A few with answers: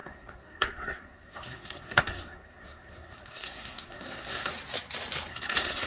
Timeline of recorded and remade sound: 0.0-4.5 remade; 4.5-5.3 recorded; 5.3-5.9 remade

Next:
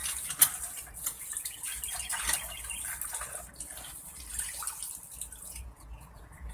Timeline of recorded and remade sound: 0.0-0.8 recorded; 0.8-1.7 remade; 1.7-5.4 recorded; 5.4-6.5 remade